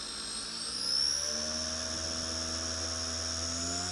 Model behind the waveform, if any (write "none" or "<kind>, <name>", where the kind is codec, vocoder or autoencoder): none